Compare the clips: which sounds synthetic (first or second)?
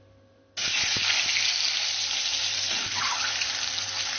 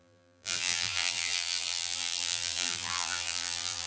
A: second